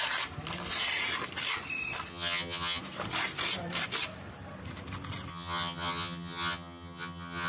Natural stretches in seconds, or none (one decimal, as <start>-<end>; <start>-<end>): 0.0-2.1; 2.8-5.3